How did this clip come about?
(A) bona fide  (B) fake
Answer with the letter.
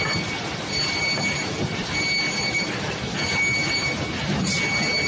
A